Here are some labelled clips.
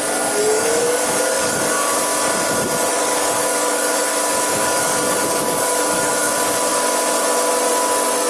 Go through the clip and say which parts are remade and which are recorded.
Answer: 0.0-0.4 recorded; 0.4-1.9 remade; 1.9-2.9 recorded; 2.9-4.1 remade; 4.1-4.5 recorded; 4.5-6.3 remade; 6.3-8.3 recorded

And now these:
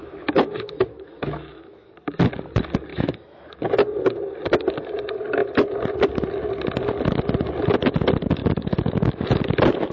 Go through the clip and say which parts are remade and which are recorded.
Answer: 0.0-1.9 remade; 1.9-2.9 recorded; 2.9-3.6 remade; 3.6-8.4 recorded; 8.4-9.4 remade; 9.4-9.9 recorded